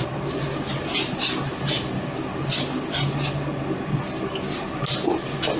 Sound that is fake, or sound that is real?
real